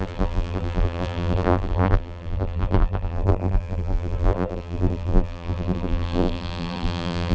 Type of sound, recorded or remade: remade